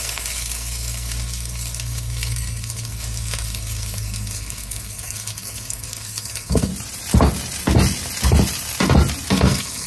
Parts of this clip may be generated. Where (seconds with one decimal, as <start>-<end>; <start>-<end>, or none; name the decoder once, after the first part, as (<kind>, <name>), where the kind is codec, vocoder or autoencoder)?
0.0-6.7 (codec, SNAC); 9.3-9.9